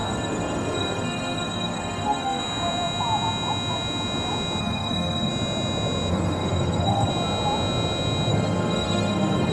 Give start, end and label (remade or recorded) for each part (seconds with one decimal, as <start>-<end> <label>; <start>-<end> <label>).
0.0-2.4 remade; 2.4-4.6 recorded; 4.6-5.3 remade; 5.3-6.1 recorded; 6.1-7.1 remade; 7.1-8.3 recorded; 8.3-9.5 remade